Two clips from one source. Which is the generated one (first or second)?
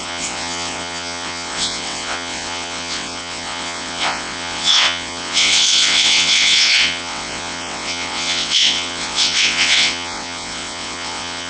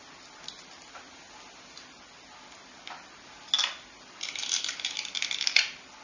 first